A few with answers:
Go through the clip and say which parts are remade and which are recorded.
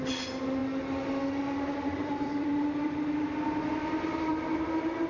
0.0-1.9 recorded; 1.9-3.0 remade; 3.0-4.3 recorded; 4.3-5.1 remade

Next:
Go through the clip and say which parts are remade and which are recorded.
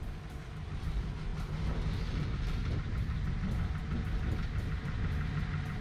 0.0-5.8 recorded